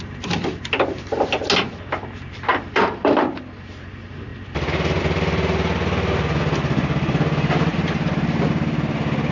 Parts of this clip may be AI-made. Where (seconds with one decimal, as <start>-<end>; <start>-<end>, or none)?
2.5-3.2